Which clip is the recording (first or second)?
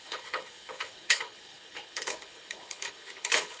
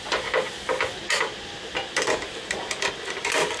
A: second